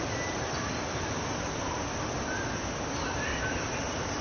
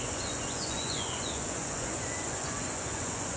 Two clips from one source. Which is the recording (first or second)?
first